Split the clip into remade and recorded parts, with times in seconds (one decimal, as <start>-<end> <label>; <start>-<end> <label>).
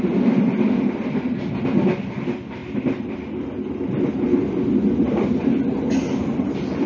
0.0-6.9 recorded